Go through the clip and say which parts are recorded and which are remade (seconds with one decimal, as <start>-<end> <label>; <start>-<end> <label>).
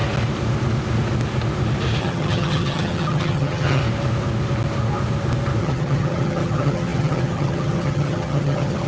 0.0-2.0 recorded; 2.0-3.8 remade; 3.8-5.6 recorded; 5.6-8.9 remade